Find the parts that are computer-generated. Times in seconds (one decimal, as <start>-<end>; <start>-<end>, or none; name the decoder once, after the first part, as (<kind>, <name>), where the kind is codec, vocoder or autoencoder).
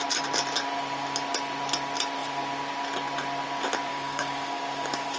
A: 3.9-5.2 (codec, DAC)